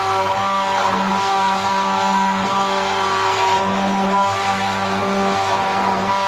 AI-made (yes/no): yes